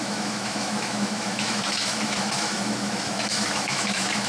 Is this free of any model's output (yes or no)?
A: no